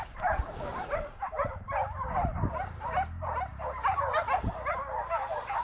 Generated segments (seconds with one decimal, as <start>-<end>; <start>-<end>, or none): 3.5-5.0